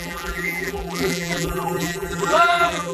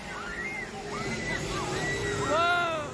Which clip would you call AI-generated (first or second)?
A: first